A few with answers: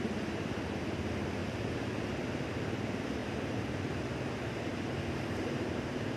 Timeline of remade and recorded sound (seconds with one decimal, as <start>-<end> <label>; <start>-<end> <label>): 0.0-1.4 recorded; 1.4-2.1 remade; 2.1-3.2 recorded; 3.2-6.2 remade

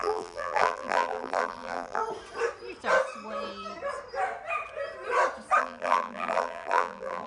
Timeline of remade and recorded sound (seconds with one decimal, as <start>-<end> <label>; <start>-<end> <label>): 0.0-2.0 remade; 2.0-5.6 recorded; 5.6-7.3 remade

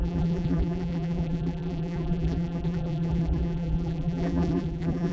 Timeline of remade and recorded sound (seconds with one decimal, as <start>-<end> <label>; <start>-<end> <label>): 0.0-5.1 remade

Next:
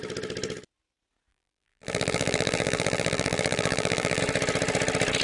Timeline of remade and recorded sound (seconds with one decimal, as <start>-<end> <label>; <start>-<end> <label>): 0.0-1.3 recorded; 1.3-4.2 remade; 4.2-5.2 recorded

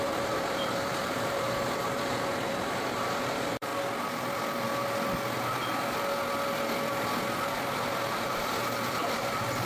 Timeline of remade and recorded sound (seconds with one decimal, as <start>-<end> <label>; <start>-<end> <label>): 0.0-3.7 remade; 3.7-8.1 recorded; 8.1-9.7 remade

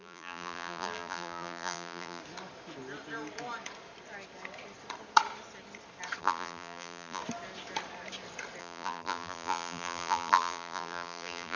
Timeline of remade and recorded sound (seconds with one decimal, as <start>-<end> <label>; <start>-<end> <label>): 0.0-2.2 remade; 2.2-6.2 recorded; 6.2-7.2 remade; 7.2-8.6 recorded; 8.6-11.6 remade

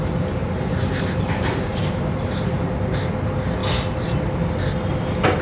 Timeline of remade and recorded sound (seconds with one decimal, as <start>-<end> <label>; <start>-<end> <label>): 0.0-0.4 recorded; 0.4-2.6 remade; 2.6-5.4 recorded